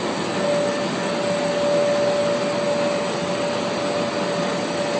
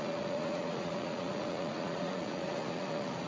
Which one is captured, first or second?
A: first